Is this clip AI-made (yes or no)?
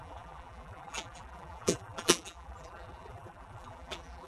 yes